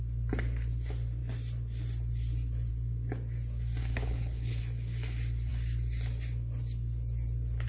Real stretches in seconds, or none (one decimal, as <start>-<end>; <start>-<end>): 0.0-3.8; 4.6-7.7

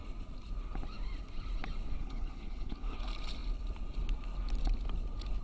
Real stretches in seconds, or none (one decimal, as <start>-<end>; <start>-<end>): 0.0-2.0; 3.0-5.4

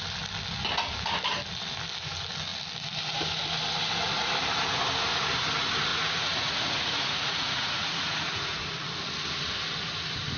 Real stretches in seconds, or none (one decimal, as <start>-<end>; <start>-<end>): 0.0-5.9; 8.7-10.4

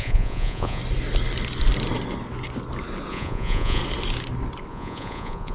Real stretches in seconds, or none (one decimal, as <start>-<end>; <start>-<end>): 0.8-3.1; 3.8-4.7

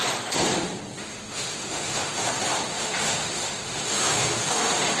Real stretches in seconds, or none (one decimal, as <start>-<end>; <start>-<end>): 0.0-1.0; 2.3-2.7